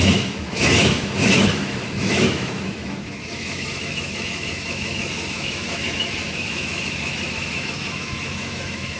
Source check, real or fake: fake